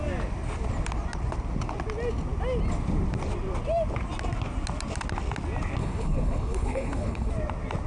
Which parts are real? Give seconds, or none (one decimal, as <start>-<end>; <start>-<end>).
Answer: 0.0-5.8; 7.3-7.9